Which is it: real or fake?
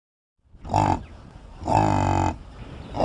real